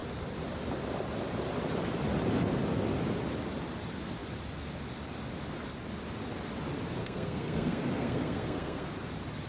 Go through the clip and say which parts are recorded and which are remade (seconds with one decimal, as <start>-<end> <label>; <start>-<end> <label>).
0.0-7.0 recorded; 7.0-8.9 remade; 8.9-9.5 recorded